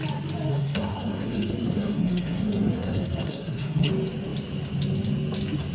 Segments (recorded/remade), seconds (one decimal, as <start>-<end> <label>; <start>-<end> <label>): 0.0-0.5 recorded; 0.5-3.9 remade; 3.9-5.7 recorded